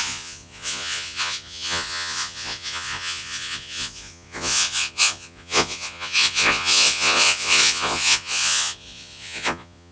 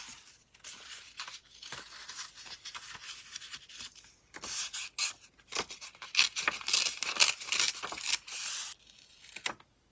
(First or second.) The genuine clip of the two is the second